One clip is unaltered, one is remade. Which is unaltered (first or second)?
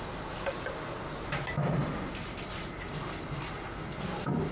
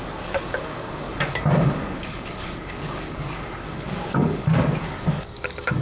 first